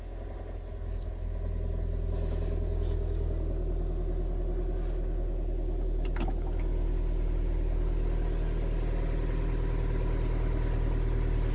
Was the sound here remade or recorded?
recorded